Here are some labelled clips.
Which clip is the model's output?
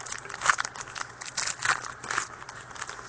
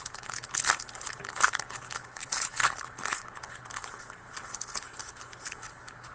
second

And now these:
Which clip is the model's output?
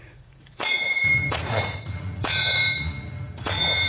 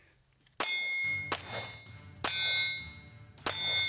first